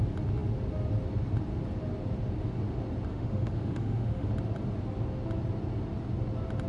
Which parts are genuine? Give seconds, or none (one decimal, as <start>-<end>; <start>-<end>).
0.0-3.1; 4.3-6.7